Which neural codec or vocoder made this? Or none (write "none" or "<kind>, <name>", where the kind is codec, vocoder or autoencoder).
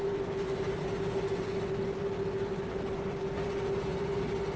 none